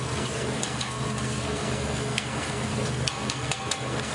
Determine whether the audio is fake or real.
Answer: fake